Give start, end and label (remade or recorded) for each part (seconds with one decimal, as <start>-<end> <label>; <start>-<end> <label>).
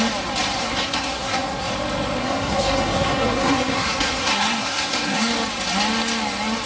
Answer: 0.0-0.6 recorded; 0.6-1.7 remade; 1.7-2.2 recorded; 2.2-5.3 remade; 5.3-6.7 recorded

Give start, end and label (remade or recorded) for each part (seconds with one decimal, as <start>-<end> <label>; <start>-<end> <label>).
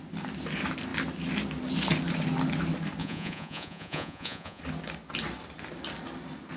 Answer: 0.0-3.0 recorded; 3.0-4.6 remade; 4.6-6.6 recorded